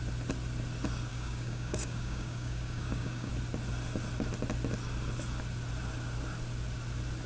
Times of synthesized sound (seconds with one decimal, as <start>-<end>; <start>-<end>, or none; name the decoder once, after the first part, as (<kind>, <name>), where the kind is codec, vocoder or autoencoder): 1.1-3.3 (codec, DAC)